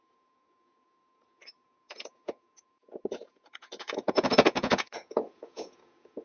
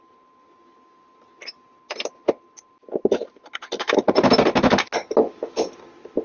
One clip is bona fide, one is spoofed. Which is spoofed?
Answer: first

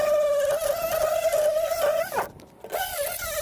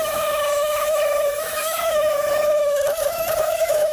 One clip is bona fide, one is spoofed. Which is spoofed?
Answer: second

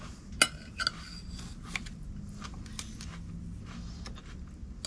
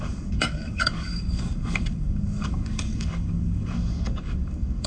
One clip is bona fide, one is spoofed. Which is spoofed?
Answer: second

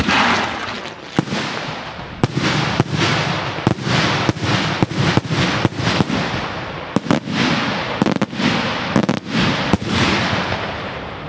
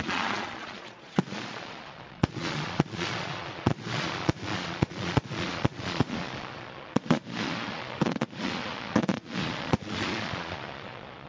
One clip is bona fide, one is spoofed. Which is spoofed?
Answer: second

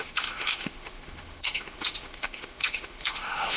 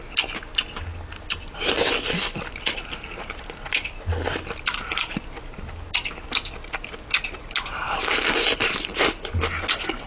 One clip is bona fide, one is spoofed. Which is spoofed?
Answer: first